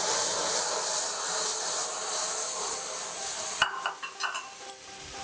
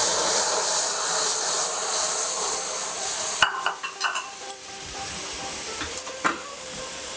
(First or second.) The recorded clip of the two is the first